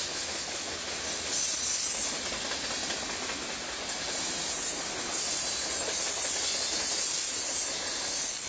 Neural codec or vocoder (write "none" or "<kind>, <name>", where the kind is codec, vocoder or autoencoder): none